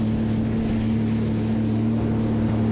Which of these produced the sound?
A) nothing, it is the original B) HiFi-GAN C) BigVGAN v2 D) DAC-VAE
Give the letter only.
A